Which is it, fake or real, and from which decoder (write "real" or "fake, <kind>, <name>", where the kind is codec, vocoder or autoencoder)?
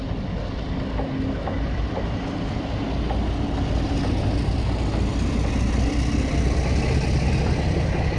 real